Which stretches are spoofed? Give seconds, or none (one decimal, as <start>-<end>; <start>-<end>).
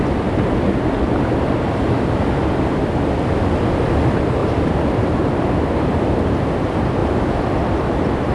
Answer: 4.4-5.2; 7.0-7.6